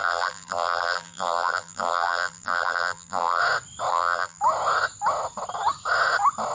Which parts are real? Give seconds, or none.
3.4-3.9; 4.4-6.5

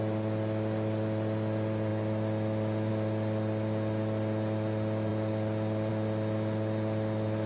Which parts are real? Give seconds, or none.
0.0-7.5